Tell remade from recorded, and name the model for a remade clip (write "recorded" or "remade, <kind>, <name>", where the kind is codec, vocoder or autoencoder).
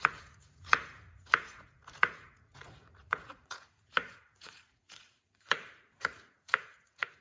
remade, vocoder, Vocos